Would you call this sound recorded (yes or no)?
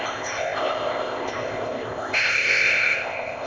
no